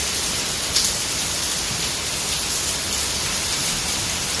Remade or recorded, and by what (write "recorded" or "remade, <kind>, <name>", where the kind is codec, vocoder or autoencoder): recorded